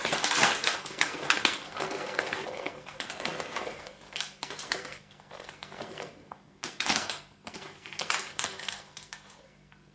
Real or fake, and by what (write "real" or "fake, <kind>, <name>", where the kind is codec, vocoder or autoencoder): fake, codec, SNAC